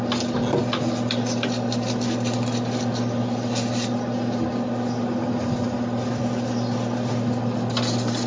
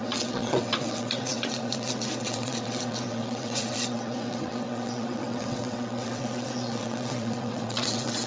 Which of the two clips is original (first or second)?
first